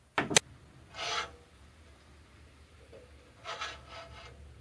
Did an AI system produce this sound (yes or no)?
no